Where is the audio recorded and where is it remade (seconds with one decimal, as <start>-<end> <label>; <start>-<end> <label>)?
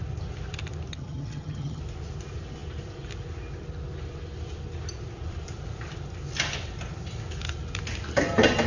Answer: 0.0-0.9 recorded; 0.9-1.8 remade; 1.8-8.7 recorded